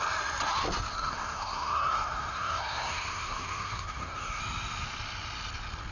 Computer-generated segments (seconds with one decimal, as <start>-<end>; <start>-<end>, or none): 0.9-4.4